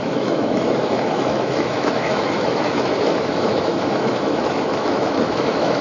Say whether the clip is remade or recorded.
remade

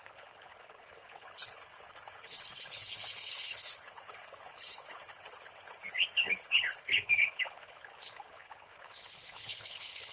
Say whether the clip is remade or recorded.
remade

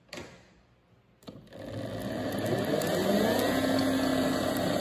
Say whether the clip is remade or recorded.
recorded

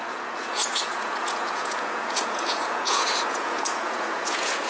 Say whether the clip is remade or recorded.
remade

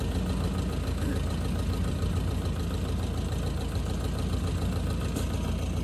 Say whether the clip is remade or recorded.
recorded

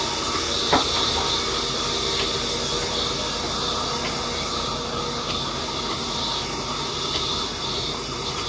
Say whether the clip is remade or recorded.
recorded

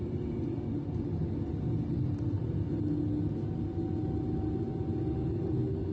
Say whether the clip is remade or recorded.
recorded